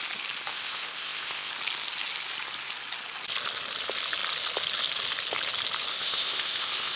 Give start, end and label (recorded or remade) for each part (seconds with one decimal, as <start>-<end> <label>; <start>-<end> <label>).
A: 0.0-0.5 recorded; 0.5-1.5 remade; 1.5-5.9 recorded; 5.9-7.0 remade